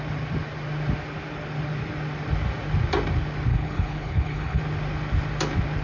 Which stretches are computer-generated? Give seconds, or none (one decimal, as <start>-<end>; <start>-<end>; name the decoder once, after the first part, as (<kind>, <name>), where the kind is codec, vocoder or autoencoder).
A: 3.5-4.6 (codec, HILCodec)